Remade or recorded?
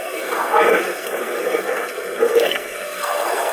remade